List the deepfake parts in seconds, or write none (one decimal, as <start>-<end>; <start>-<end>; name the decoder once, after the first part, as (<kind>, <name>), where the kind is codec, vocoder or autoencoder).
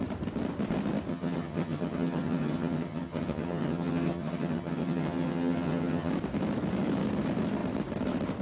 1.1-6.1 (vocoder, HiFi-GAN)